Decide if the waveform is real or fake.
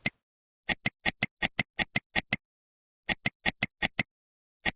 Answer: real